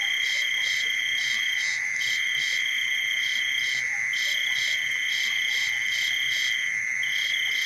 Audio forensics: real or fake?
fake